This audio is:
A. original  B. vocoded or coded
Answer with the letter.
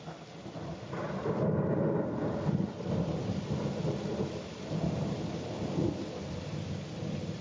A